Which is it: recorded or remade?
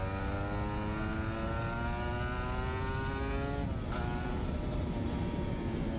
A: recorded